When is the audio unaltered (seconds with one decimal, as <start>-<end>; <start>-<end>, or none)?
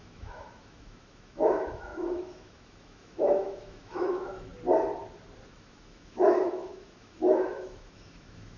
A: 4.5-5.5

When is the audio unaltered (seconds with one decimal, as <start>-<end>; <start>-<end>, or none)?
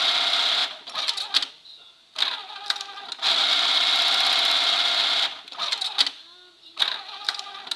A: 0.0-7.8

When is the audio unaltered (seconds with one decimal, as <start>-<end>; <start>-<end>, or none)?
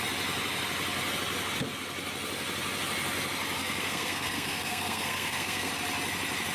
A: 0.0-3.6; 5.7-6.5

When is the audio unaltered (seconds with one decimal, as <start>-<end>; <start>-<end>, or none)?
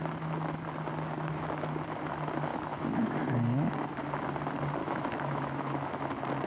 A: 0.0-2.5; 3.2-4.8; 6.1-6.5